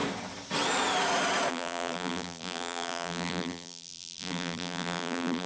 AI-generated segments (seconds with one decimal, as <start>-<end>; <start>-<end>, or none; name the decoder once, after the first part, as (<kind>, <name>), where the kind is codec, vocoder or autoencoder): 1.5-5.5 (vocoder, BigVGAN v2)